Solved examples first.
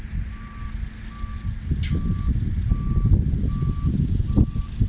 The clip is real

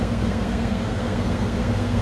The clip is fake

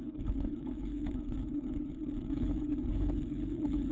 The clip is fake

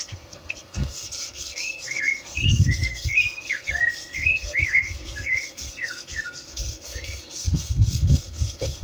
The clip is fake